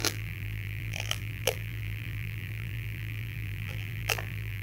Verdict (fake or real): fake